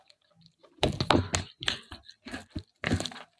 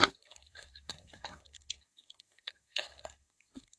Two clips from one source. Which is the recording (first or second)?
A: first